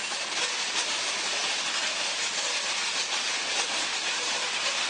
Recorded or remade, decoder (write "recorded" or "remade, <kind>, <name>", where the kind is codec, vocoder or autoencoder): recorded